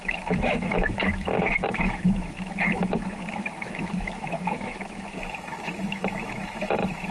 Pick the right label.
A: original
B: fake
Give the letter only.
B